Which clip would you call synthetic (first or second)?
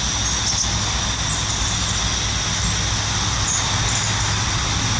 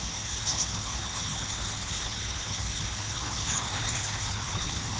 second